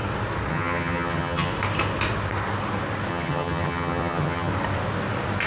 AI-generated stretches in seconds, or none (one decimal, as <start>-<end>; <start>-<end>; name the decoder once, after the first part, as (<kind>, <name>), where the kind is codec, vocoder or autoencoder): 0.5-1.5 (vocoder, HiFi-GAN); 3.1-4.5